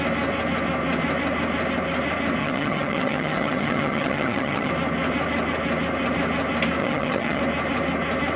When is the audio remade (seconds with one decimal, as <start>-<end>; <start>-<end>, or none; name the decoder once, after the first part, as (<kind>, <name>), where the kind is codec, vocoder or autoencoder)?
2.4-4.7 (vocoder, HiFi-GAN); 6.8-7.4